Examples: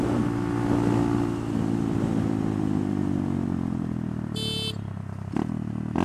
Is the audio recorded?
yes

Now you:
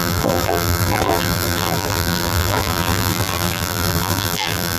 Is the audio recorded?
no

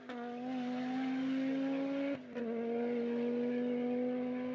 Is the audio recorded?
yes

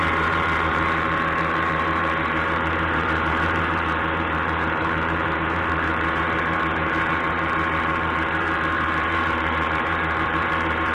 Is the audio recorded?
no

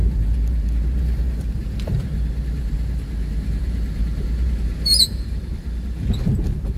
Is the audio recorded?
no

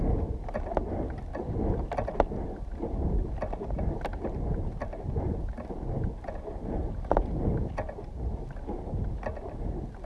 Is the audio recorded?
yes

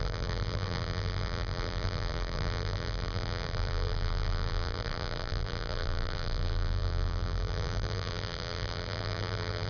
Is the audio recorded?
no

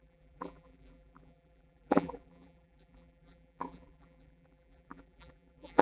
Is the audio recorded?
no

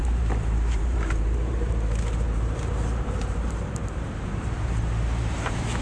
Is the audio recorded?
no